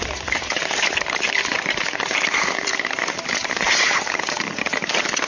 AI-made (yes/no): yes